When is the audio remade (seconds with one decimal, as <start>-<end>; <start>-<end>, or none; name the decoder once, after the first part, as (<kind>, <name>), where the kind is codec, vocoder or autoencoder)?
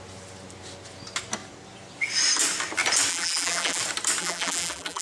3.1-3.8 (vocoder, BigVGAN v2); 4.2-5.0